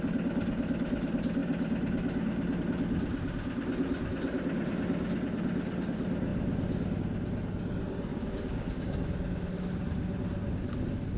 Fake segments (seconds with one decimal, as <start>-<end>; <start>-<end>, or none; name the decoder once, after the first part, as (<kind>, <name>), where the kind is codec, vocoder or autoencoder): 8.1-9.1 (codec, DAC)